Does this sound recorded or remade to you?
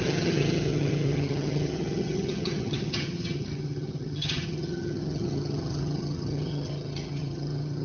remade